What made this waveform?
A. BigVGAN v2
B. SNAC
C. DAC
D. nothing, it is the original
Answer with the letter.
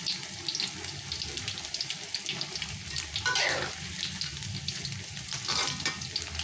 D